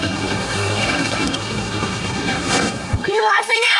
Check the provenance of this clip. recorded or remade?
remade